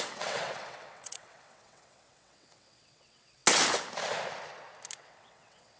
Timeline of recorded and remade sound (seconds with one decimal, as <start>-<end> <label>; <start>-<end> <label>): 0.0-3.4 remade; 3.4-5.0 recorded; 5.0-5.8 remade